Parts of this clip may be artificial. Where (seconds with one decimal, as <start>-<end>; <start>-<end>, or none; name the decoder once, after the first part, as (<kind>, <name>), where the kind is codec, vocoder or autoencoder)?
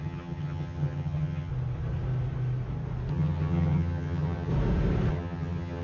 0.0-1.5 (vocoder, HiFi-GAN); 3.1-4.5; 5.1-5.8